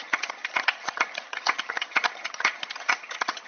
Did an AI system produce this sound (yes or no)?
yes